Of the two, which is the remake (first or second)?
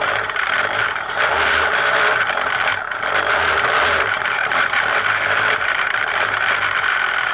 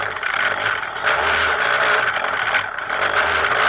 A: first